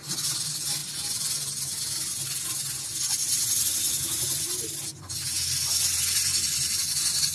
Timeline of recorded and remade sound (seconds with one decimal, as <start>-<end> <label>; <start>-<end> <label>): 0.0-7.3 recorded